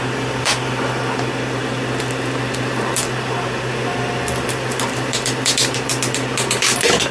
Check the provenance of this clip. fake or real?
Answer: fake